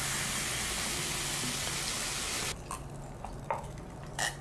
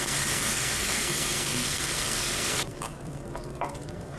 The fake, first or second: second